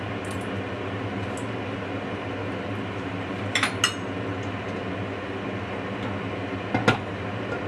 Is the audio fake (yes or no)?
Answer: no